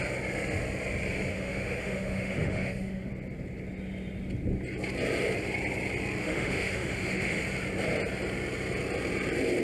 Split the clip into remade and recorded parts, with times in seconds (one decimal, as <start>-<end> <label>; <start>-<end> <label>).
0.0-1.3 recorded; 1.3-3.1 remade; 3.1-6.2 recorded; 6.2-7.4 remade; 7.4-9.6 recorded